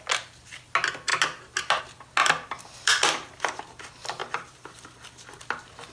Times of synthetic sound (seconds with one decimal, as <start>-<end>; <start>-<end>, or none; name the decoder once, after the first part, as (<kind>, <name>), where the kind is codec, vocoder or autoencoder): 2.2-3.6 (vocoder, BigVGAN v2); 4.2-5.4